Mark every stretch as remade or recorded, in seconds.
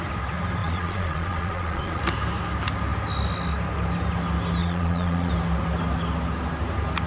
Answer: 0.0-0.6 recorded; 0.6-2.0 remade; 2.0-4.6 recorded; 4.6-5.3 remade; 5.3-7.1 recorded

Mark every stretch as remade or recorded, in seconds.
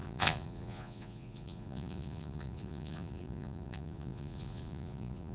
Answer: 0.0-5.3 remade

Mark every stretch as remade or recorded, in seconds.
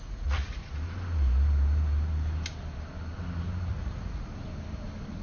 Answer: 0.0-0.6 remade; 0.6-3.7 recorded; 3.7-4.3 remade; 4.3-5.2 recorded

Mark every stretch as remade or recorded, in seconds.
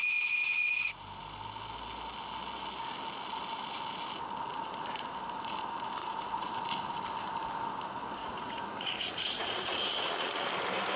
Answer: 0.0-6.0 recorded; 6.0-6.5 remade; 6.5-8.2 recorded; 8.2-10.5 remade; 10.5-11.0 recorded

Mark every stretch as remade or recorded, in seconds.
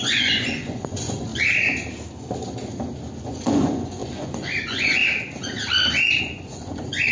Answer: 0.0-1.3 remade; 1.3-3.2 recorded; 3.2-5.0 remade; 5.0-6.2 recorded; 6.2-7.1 remade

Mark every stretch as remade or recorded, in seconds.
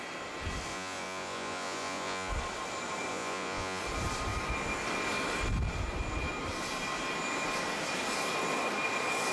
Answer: 0.0-0.7 recorded; 0.7-2.3 remade; 2.3-3.1 recorded; 3.1-3.8 remade; 3.8-9.3 recorded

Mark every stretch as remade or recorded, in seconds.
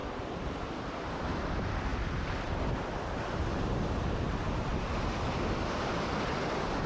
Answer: 0.0-6.9 recorded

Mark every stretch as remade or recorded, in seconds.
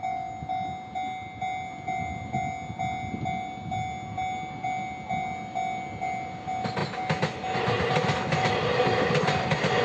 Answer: 0.0-9.8 recorded